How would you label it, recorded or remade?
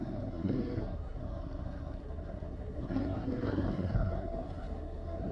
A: remade